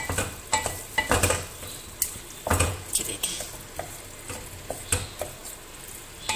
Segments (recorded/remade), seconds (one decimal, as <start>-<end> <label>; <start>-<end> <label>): 0.0-2.5 recorded; 2.5-3.4 remade; 3.4-6.4 recorded